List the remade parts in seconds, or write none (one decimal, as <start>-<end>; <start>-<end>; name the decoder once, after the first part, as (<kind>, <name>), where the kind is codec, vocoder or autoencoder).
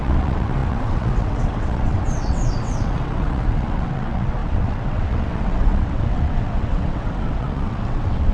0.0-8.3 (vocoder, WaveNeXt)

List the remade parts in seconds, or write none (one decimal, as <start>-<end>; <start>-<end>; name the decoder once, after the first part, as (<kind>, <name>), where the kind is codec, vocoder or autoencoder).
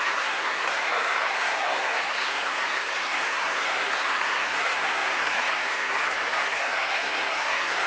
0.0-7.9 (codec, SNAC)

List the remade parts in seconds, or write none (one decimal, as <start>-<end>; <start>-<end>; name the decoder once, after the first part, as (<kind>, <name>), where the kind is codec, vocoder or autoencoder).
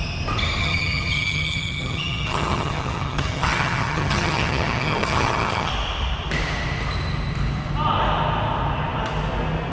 0.6-5.7 (vocoder, HiFi-GAN)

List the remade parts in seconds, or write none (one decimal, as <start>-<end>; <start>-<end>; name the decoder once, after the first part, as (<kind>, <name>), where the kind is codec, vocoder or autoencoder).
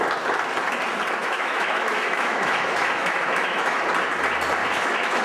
1.2-3.8 (autoencoder, DAC-VAE); 4.6-5.2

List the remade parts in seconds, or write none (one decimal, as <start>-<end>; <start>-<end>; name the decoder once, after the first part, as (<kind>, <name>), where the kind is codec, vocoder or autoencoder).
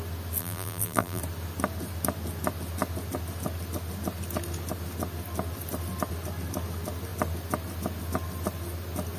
0.4-1.2 (vocoder, BigVGAN v2)